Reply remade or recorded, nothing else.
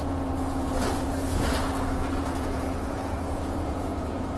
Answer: remade